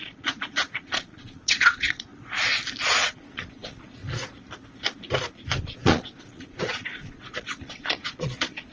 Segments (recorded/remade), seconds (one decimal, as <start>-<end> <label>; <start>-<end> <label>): 0.0-2.1 remade; 2.1-2.8 recorded; 2.8-4.0 remade; 4.0-5.6 recorded; 5.6-8.7 remade